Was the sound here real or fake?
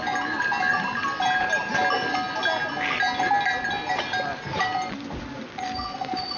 real